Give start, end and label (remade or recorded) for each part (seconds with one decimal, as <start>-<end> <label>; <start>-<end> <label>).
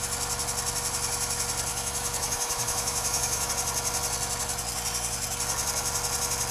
0.0-1.7 recorded; 1.7-3.5 remade; 3.5-6.5 recorded